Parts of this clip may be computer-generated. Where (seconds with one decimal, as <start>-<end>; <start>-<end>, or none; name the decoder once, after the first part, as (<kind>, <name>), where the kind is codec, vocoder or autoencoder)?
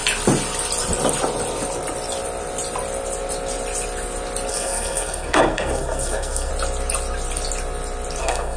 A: 4.5-6.5 (codec, SNAC); 8.2-8.6